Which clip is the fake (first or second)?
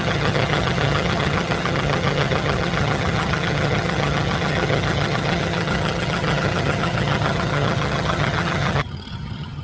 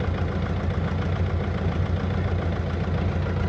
first